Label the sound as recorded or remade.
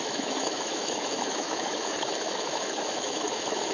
remade